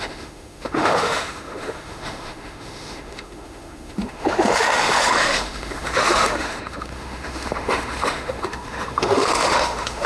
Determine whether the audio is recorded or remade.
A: remade